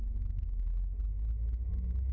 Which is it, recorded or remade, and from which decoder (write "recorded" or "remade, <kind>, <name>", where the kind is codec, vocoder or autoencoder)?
recorded